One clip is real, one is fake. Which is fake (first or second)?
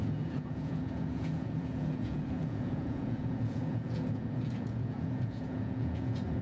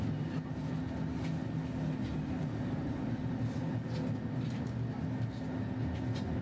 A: first